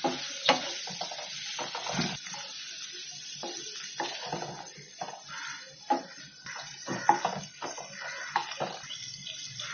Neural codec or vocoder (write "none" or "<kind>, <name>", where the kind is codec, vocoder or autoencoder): none